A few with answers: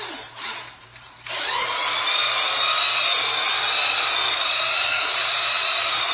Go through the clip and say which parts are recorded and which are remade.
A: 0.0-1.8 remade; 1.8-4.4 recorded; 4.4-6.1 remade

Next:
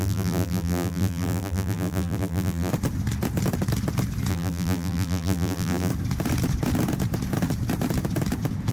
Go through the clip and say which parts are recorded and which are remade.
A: 0.0-2.7 remade; 2.7-4.3 recorded; 4.3-5.9 remade; 5.9-8.7 recorded

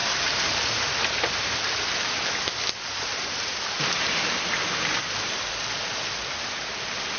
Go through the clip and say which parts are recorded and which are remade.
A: 0.0-0.7 remade; 0.7-2.8 recorded; 2.8-5.1 remade; 5.1-7.2 recorded

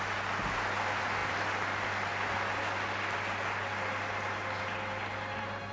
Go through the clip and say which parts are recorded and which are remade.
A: 0.0-5.7 recorded

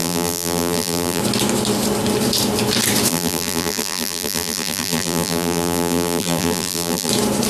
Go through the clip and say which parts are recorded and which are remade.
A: 0.0-1.2 remade; 1.2-3.1 recorded; 3.1-7.1 remade; 7.1-7.5 recorded

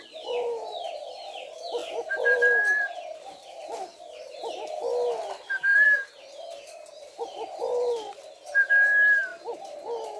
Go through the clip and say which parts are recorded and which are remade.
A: 0.0-1.8 recorded; 1.8-4.3 remade; 4.3-5.7 recorded; 5.7-8.1 remade; 8.1-10.2 recorded

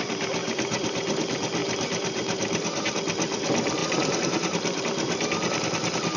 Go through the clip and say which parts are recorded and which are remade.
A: 0.0-0.4 recorded; 0.4-1.2 remade; 1.2-1.6 recorded; 1.6-2.9 remade; 2.9-3.8 recorded; 3.8-4.8 remade; 4.8-6.2 recorded